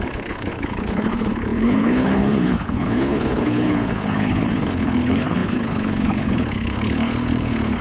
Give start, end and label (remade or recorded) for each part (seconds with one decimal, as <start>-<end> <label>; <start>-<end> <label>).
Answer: 0.0-7.8 remade